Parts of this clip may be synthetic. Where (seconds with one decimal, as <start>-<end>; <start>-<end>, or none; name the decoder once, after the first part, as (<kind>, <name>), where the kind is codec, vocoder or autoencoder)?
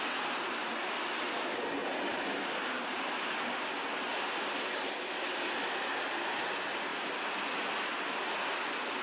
1.8-3.1 (vocoder, BigVGAN v2)